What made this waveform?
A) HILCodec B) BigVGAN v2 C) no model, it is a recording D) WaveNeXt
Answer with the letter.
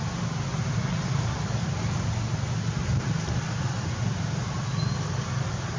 C